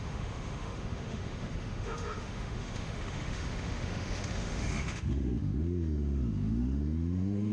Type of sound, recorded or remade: remade